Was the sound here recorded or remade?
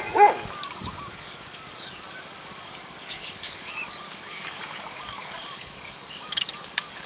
remade